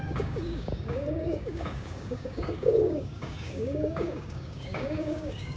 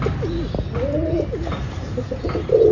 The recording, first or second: second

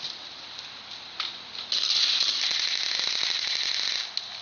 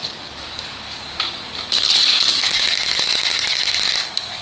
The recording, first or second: first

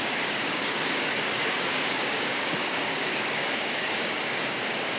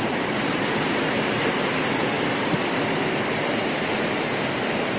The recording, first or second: second